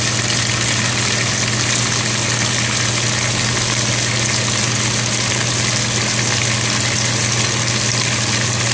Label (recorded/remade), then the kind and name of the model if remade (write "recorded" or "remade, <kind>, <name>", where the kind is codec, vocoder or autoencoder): recorded